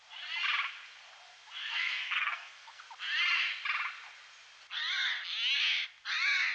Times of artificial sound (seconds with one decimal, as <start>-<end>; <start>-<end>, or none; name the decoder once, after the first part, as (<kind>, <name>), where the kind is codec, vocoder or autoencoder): 1.6-2.8 (codec, SNAC)